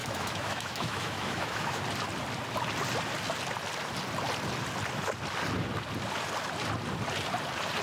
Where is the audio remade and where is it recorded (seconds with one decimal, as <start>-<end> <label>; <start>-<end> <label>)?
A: 0.0-1.8 remade; 1.8-7.8 recorded